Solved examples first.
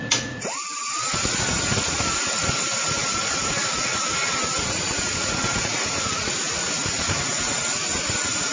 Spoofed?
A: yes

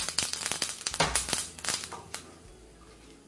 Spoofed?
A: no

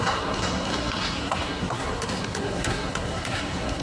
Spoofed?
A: yes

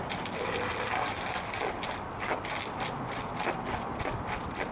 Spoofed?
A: no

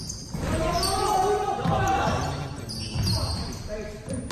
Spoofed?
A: no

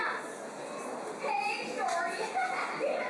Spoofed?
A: no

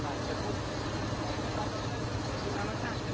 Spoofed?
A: no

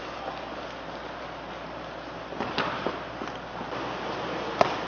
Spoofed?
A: no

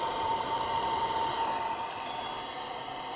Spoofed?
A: yes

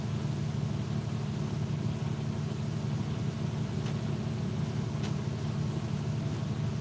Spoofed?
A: no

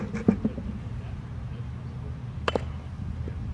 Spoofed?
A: no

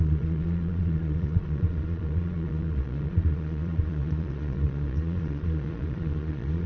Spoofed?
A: yes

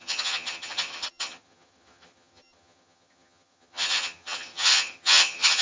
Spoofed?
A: yes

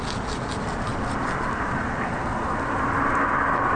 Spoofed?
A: no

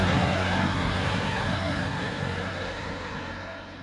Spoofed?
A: yes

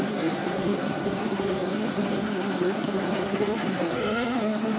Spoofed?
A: yes